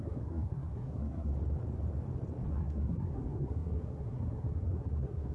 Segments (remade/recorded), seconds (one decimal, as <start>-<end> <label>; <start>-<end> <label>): 0.0-1.3 remade; 1.3-2.5 recorded; 2.5-5.3 remade